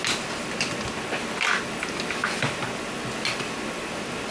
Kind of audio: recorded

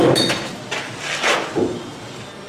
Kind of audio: recorded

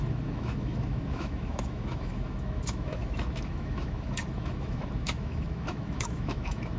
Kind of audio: remade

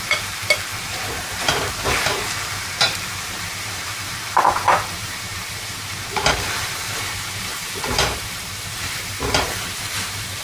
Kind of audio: remade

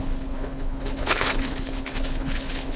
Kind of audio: remade